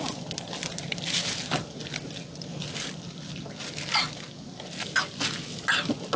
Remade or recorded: recorded